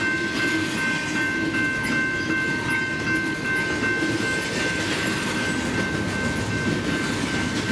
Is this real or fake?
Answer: real